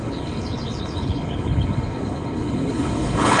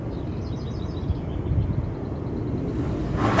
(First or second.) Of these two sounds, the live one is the second